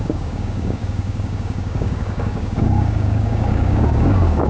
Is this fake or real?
fake